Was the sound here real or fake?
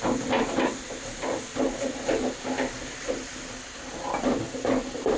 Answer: real